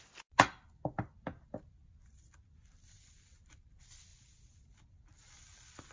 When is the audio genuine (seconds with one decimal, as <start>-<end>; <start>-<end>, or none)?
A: 0.0-5.9